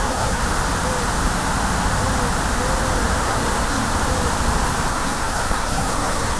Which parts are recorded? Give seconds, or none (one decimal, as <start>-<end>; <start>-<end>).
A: 0.4-3.2; 3.9-4.9